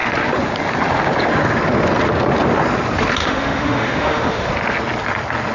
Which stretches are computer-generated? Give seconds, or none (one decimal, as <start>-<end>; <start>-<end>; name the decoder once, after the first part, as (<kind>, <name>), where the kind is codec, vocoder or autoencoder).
3.2-4.5 (autoencoder, DAC-VAE)